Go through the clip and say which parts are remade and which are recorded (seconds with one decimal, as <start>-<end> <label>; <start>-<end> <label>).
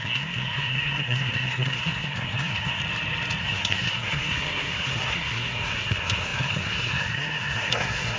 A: 0.0-2.8 remade; 2.8-3.4 recorded; 3.4-8.2 remade